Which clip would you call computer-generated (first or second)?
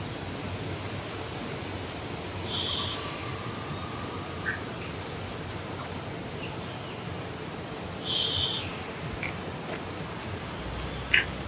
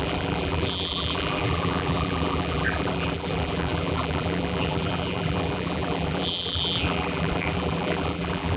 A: second